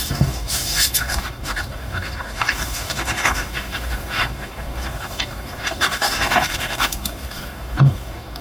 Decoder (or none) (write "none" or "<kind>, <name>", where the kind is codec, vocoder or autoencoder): codec, DAC